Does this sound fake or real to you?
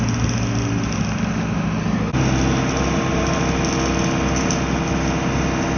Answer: real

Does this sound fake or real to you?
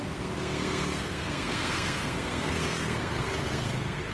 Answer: fake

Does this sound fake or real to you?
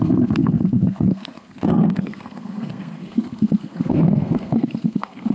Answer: fake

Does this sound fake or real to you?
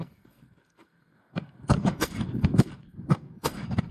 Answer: fake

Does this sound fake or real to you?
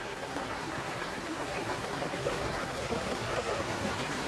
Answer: fake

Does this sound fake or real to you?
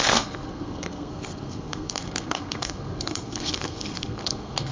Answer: fake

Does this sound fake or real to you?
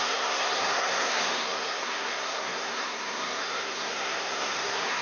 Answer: fake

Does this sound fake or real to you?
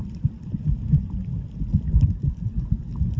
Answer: real